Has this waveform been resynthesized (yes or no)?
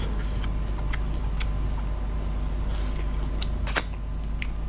no